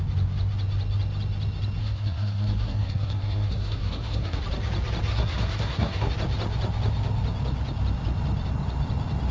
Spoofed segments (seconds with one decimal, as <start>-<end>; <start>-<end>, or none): 1.8-4.4; 5.1-6.1